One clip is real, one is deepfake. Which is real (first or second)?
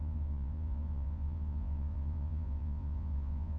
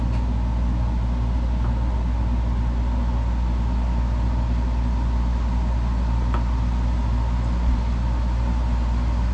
second